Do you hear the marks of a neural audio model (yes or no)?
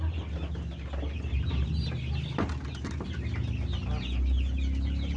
no